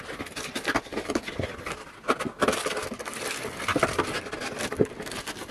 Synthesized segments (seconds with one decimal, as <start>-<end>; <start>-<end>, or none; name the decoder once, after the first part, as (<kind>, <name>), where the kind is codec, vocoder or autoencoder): none